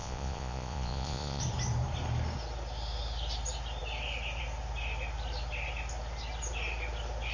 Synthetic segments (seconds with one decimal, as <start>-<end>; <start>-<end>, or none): 0.0-1.4